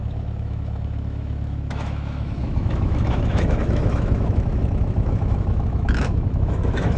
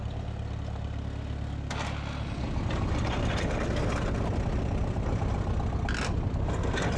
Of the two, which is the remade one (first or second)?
first